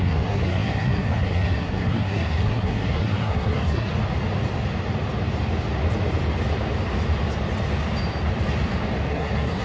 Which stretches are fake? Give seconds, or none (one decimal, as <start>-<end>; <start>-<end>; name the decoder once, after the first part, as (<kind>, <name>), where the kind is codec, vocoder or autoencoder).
0.0-3.9 (codec, SNAC); 9.1-9.6